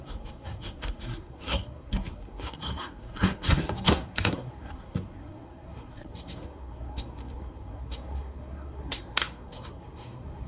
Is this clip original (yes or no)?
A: no